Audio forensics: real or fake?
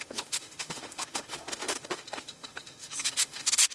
fake